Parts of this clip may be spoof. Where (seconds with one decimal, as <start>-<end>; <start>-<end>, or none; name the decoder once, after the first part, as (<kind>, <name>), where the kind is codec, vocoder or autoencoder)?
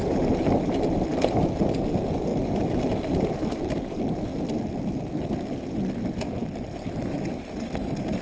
1.1-1.6 (vocoder, BigVGAN v2); 2.3-4.9